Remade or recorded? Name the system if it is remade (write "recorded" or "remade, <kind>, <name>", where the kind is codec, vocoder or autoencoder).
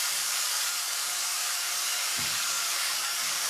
remade, codec, DAC